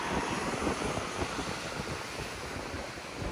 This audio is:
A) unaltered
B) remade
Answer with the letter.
A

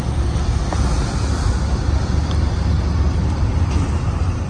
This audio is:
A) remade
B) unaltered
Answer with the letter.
A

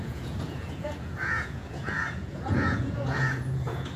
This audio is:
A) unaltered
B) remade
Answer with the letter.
B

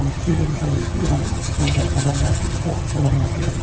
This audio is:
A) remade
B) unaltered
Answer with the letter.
A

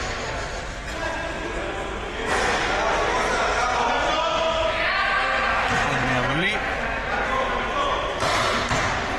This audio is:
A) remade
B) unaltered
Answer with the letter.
B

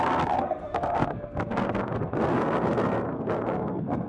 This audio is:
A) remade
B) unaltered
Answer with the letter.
A